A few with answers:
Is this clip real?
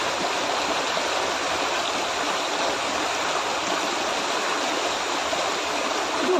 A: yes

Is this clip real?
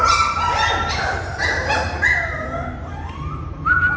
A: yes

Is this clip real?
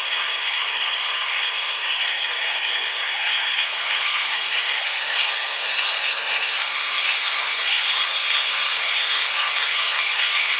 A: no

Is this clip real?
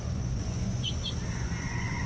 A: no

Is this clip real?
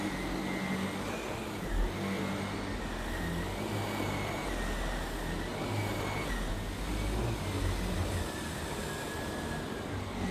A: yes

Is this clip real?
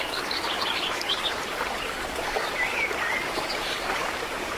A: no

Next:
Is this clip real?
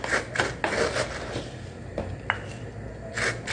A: yes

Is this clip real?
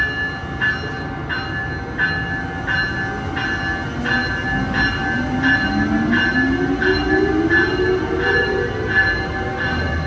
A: yes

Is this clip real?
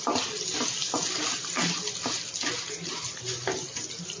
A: yes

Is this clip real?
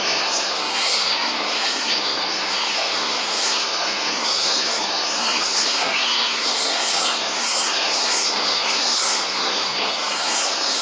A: no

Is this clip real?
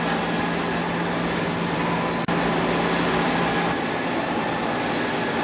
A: yes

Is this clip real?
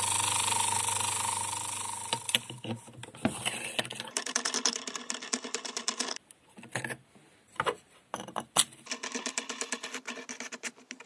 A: yes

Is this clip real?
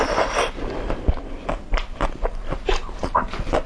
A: yes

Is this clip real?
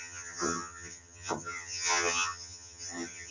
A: no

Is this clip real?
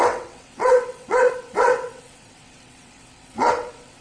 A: no